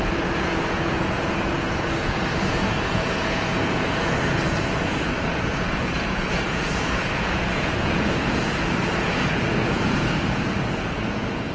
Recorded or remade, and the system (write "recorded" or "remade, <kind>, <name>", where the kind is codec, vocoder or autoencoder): remade, vocoder, Vocos